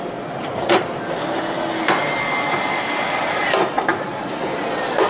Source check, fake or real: real